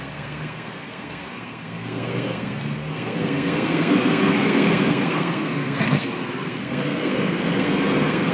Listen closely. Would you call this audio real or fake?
fake